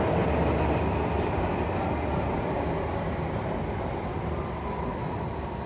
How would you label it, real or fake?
real